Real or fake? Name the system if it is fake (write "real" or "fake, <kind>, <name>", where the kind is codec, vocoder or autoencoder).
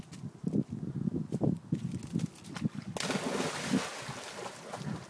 real